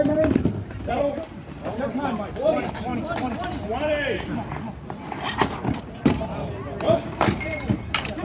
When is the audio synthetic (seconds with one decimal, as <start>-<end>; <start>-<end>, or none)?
0.0-2.9; 5.8-8.2